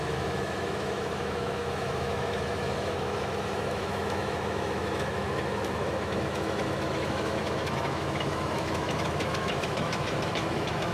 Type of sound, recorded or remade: remade